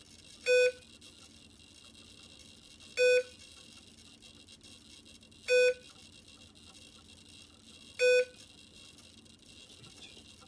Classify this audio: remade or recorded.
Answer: recorded